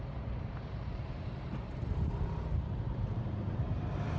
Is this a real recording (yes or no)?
no